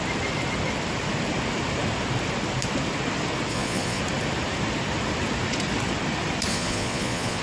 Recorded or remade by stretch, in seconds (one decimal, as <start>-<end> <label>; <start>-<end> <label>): 0.0-3.5 recorded; 3.5-4.0 remade; 4.0-6.5 recorded; 6.5-7.4 remade